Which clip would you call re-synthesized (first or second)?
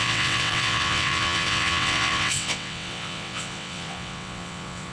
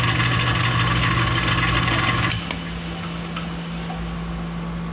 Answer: first